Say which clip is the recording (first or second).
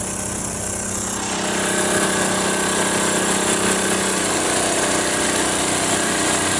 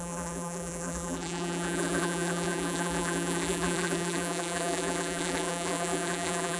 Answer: first